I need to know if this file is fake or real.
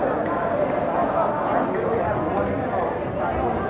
real